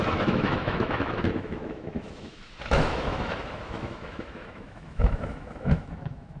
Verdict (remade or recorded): remade